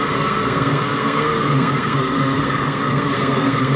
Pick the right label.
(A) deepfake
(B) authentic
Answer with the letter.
A